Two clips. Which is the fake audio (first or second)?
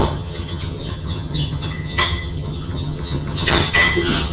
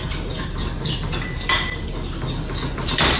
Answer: first